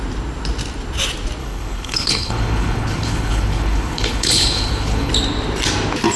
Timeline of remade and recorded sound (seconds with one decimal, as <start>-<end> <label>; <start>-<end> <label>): 0.0-1.4 recorded; 1.4-5.1 remade; 5.1-6.2 recorded